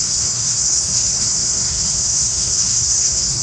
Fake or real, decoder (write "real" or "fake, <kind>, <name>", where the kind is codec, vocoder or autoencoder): fake, codec, SNAC